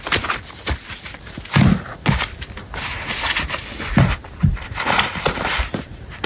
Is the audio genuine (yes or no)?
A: yes